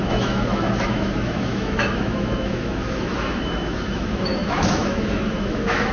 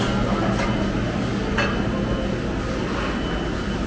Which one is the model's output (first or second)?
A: first